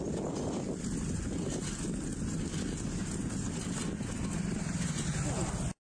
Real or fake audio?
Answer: real